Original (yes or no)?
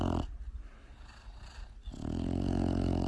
yes